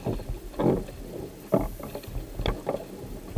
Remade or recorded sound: recorded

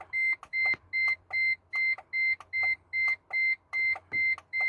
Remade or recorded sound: recorded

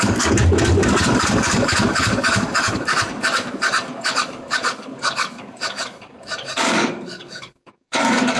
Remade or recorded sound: remade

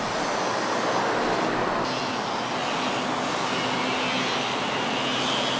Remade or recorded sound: recorded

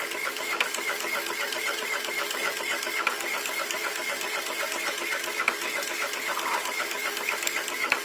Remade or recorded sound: remade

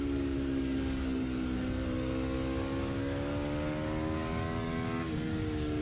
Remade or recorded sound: remade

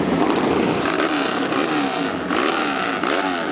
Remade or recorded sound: recorded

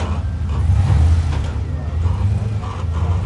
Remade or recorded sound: recorded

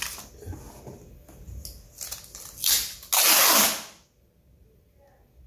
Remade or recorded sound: recorded